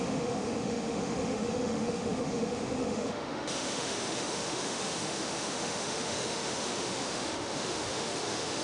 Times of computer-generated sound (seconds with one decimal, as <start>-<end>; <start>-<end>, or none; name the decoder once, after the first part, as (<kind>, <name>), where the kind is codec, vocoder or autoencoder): 0.0-8.6 (autoencoder, DAC-VAE)